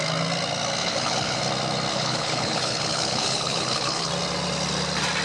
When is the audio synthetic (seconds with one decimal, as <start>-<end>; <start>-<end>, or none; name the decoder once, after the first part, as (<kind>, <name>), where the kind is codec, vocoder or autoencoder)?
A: 0.8-1.4 (codec, HILCodec); 1.9-4.1